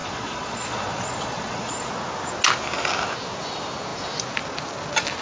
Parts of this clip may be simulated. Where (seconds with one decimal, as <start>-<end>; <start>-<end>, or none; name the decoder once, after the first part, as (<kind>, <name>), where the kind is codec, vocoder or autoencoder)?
0.0-1.9 (vocoder, Vocos)

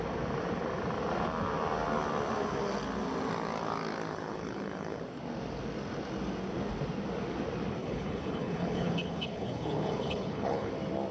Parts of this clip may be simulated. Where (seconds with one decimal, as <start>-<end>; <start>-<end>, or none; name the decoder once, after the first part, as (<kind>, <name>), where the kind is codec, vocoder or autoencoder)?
4.1-5.0 (codec, HILCodec); 7.8-10.7

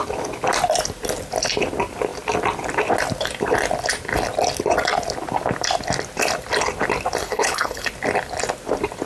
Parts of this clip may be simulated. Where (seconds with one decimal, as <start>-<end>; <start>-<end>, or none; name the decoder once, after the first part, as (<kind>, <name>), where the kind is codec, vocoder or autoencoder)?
7.2-7.9 (codec, HILCodec)